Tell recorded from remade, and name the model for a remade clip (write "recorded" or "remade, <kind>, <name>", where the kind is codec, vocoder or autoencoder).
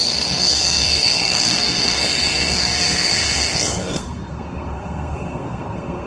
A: remade, codec, SNAC